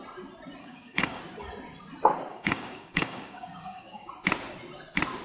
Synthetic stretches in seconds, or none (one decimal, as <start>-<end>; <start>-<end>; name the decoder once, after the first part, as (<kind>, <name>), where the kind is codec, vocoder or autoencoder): 0.6-1.2 (codec, DAC); 2.3-4.1